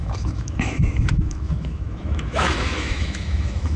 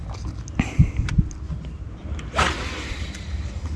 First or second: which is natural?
second